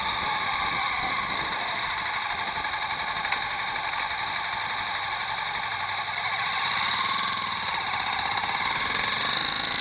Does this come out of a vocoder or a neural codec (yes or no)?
no